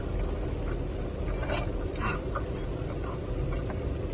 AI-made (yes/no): no